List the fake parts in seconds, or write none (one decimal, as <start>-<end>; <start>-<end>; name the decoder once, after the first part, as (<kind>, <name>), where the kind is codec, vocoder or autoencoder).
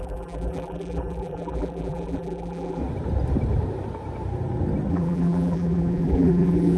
0.0-2.8 (vocoder, BigVGAN v2); 4.9-6.8